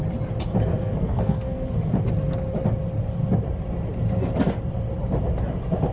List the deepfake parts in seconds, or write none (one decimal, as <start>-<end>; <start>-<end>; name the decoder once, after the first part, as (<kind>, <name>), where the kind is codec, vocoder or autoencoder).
0.7-1.7 (codec, SNAC)